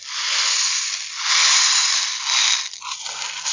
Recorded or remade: recorded